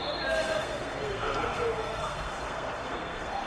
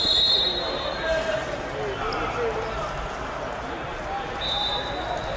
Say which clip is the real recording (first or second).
second